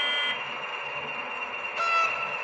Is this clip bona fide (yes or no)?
yes